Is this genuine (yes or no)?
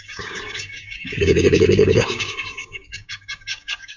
no